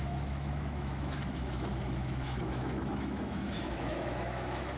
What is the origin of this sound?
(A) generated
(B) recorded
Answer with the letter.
A